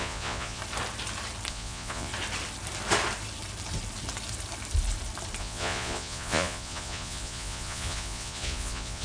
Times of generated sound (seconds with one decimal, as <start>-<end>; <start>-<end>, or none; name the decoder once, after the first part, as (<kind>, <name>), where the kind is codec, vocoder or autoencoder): 0.0-0.6 (vocoder, Vocos); 1.5-2.1; 5.4-9.0